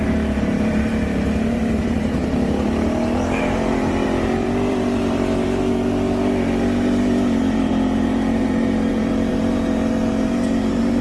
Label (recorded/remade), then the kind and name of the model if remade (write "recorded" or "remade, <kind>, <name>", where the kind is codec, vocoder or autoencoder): remade, vocoder, BigVGAN v2